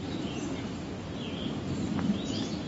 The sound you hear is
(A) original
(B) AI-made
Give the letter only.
A